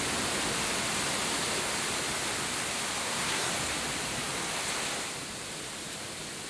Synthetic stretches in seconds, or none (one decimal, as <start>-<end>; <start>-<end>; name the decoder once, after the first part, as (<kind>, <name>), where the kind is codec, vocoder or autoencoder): 3.0-3.5 (codec, SNAC)